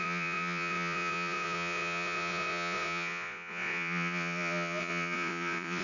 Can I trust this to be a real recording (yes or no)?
no